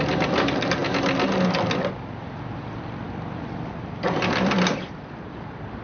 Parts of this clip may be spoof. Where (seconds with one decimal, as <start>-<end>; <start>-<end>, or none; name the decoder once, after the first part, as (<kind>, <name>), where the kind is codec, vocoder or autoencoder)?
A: 0.0-0.8 (vocoder, BigVGAN v2); 3.4-5.8